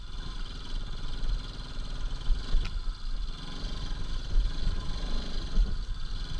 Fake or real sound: real